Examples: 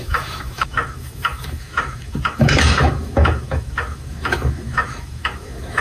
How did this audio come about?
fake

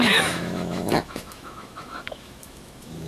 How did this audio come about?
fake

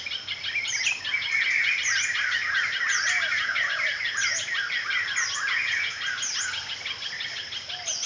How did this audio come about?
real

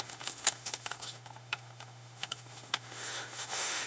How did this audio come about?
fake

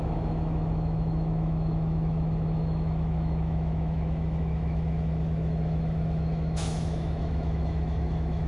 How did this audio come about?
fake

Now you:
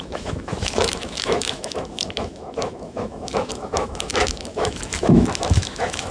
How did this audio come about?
fake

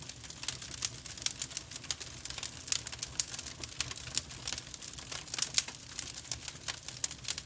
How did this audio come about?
real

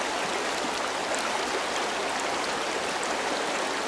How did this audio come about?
real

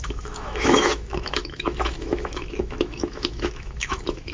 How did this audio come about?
fake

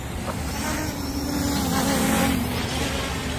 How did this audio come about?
real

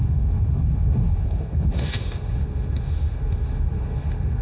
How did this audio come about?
fake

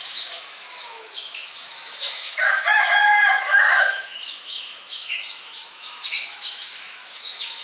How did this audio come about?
fake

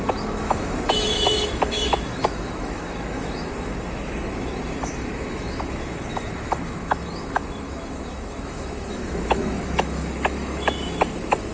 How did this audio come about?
fake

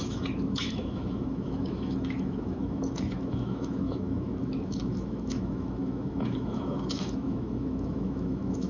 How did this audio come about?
fake